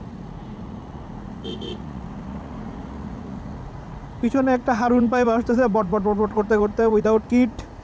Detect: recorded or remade remade